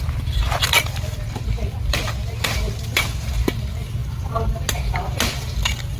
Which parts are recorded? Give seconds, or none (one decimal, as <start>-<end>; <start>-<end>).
0.0-6.0

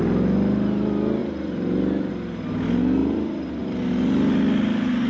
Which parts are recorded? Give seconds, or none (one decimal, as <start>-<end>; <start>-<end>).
0.0-1.2; 2.1-3.0; 3.6-5.1

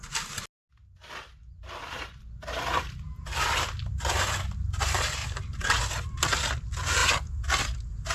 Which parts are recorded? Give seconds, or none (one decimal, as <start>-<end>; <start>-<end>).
0.0-5.2; 5.8-8.1